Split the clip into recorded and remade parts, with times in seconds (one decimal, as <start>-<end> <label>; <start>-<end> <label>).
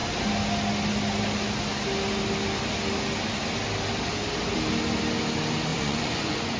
0.0-5.7 recorded; 5.7-6.6 remade